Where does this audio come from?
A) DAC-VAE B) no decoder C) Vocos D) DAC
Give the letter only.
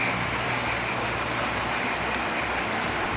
B